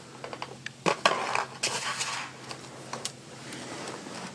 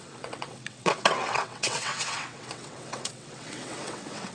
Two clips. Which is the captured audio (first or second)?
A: first